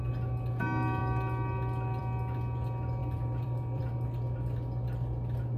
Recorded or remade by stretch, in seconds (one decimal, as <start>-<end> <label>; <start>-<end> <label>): 0.0-3.0 recorded; 3.0-3.8 remade; 3.8-5.6 recorded